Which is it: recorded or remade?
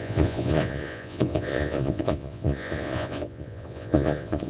remade